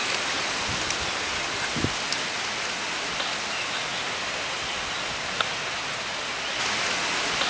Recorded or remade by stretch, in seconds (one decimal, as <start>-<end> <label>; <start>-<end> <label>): 0.0-7.5 recorded